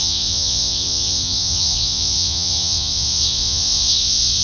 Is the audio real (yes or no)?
no